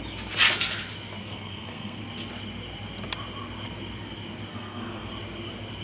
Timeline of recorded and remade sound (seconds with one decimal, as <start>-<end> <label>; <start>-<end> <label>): 0.0-1.2 recorded; 1.2-2.0 remade; 2.0-4.5 recorded; 4.5-5.1 remade; 5.1-5.8 recorded